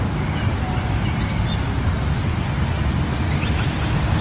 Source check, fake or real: real